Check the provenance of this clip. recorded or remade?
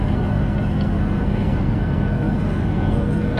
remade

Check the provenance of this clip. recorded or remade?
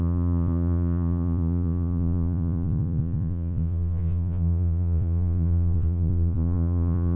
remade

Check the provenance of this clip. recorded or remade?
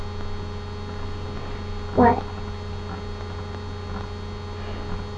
recorded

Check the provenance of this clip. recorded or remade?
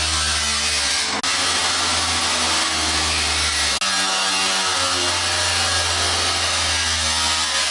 recorded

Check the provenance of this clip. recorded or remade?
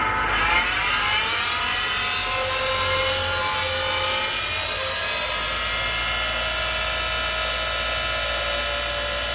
recorded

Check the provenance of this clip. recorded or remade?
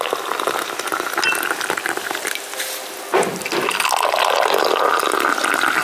recorded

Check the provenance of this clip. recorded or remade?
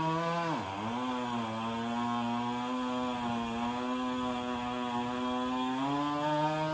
recorded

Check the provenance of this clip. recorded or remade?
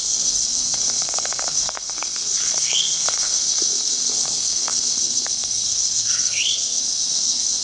remade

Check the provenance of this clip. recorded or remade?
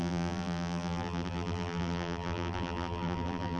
remade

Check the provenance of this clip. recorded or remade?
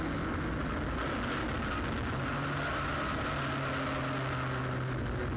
recorded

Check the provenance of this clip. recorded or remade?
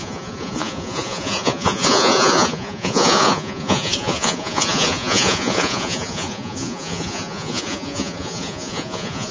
remade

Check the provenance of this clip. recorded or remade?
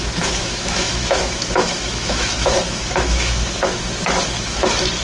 remade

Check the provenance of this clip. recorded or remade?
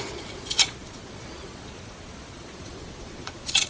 remade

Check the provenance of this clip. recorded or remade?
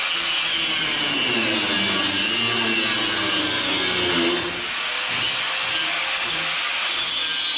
recorded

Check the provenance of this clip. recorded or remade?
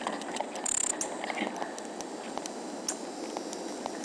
recorded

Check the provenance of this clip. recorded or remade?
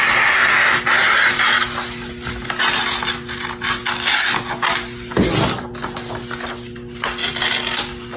recorded